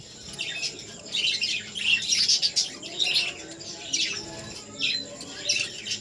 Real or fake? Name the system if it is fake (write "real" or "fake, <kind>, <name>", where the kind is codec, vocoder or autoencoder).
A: real